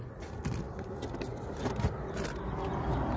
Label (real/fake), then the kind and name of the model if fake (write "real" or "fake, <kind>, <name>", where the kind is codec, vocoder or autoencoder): real